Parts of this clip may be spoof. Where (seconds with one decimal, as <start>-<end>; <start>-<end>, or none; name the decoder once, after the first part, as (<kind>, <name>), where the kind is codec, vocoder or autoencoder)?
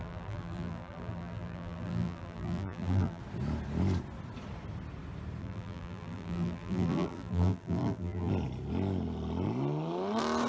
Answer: 0.0-3.2 (vocoder, BigVGAN v2); 5.4-8.3